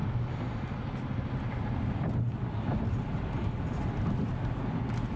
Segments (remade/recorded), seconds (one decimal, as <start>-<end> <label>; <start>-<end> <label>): 0.0-5.2 recorded